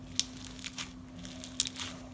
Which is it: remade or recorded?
recorded